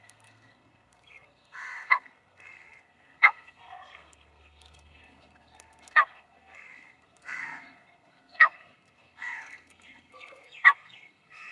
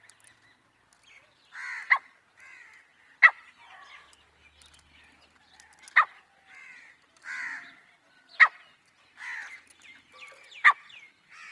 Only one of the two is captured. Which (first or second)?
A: second